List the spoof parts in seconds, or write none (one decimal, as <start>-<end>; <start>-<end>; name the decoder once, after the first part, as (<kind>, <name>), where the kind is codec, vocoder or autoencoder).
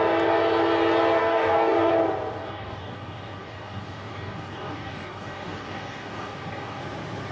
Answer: 1.2-1.9 (codec, DAC); 2.4-6.8